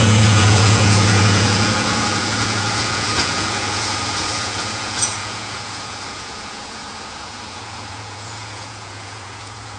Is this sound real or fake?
fake